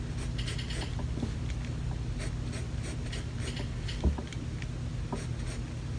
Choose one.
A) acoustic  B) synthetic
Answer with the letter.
A